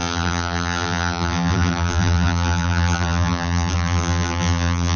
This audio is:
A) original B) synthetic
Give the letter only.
B